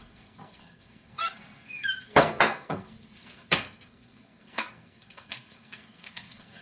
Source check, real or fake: fake